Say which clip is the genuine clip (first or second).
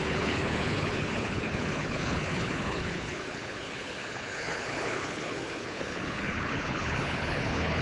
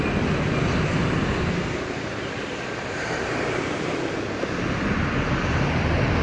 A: second